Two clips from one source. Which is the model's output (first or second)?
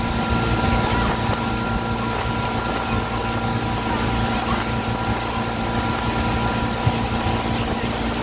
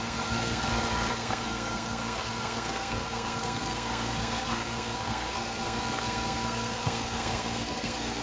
second